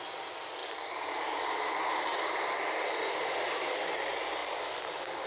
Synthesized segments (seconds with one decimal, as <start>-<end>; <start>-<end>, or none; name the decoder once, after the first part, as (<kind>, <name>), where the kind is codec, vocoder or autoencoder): none